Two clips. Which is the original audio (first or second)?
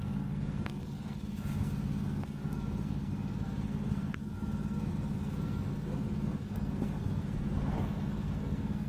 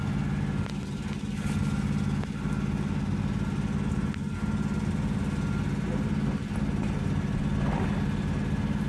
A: second